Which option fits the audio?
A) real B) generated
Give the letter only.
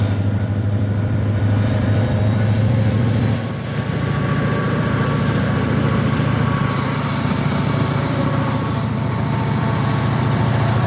B